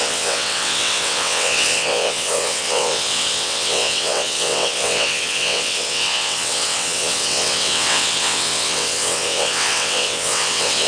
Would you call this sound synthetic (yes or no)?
yes